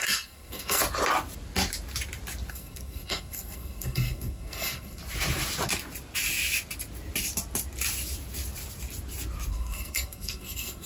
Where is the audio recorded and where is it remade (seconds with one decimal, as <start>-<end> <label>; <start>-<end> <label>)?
0.0-0.8 remade; 0.8-2.5 recorded; 2.5-5.0 remade; 5.0-9.5 recorded; 9.5-10.9 remade